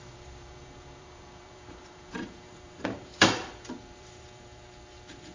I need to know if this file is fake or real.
fake